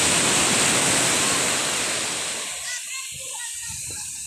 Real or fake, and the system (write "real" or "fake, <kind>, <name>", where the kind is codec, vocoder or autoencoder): real